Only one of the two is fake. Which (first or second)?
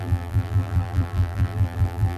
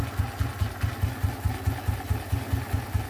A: first